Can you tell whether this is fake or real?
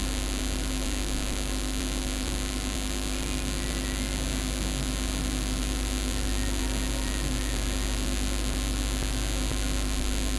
real